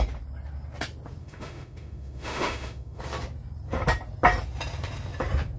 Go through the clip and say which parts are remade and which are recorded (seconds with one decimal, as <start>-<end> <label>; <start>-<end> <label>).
0.0-1.2 recorded; 1.2-3.0 remade; 3.0-5.6 recorded